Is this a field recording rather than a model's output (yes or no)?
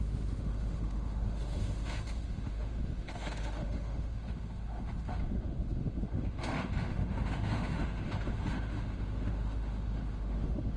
no